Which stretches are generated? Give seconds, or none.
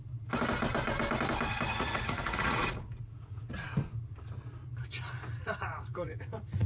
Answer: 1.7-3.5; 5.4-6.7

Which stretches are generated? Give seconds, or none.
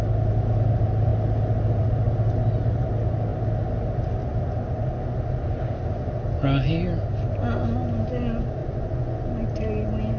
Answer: 8.6-9.3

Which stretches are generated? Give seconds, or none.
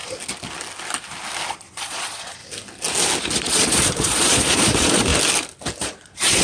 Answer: 1.5-2.4; 3.3-5.1; 5.8-6.4